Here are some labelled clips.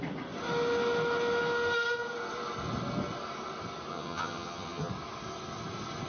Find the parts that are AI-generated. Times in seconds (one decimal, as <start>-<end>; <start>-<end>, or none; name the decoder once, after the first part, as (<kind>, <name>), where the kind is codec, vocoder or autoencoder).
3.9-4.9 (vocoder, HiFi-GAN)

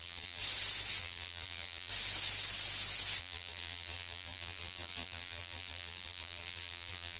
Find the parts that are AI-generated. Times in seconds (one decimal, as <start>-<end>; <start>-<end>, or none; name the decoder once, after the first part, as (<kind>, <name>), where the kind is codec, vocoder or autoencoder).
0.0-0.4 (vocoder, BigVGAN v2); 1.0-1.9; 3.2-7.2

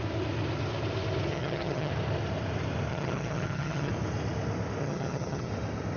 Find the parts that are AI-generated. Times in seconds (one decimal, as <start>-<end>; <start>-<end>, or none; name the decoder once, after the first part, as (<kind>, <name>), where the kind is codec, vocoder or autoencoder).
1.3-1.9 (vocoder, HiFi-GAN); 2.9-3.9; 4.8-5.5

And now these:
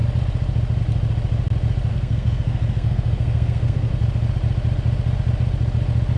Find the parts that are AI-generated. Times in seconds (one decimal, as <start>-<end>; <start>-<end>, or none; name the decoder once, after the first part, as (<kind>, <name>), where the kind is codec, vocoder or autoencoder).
1.9-3.9 (codec, SNAC)

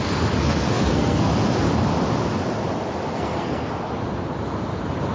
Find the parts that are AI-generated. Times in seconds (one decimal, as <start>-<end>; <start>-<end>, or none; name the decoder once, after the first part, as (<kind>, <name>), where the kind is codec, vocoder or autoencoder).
0.4-1.3 (codec, SNAC); 3.1-3.7

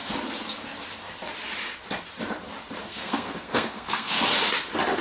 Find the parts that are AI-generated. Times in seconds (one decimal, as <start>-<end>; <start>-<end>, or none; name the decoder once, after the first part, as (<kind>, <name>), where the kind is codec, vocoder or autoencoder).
2.8-4.2 (codec, SNAC)

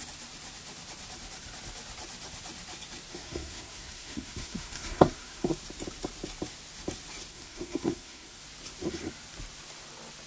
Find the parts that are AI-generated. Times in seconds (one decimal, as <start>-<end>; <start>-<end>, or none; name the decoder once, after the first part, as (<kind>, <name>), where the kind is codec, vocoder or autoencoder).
3.1-5.6 (codec, SNAC); 7.3-8.4